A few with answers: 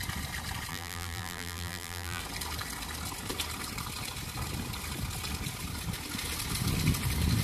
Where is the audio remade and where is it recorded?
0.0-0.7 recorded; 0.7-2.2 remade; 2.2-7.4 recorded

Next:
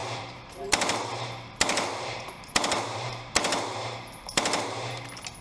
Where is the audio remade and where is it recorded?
0.0-5.4 remade

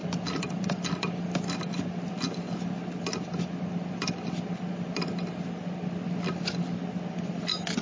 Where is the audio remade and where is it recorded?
0.0-7.8 recorded